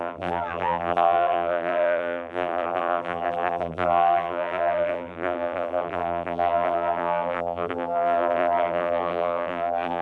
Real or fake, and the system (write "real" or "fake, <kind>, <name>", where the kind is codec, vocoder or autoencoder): fake, vocoder, BigVGAN v2